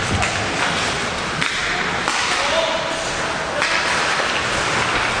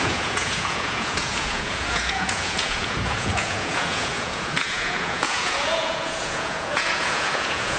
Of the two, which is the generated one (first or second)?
second